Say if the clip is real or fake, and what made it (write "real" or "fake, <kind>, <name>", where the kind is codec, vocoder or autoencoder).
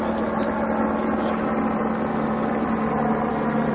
real